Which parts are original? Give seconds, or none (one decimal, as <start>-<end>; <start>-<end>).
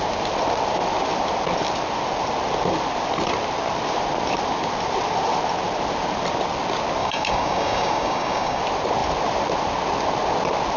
0.0-7.0; 8.6-10.8